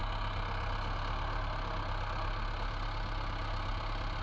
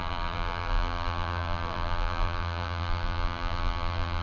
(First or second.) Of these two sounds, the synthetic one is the second